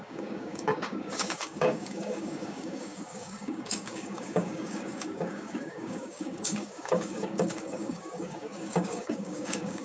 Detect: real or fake fake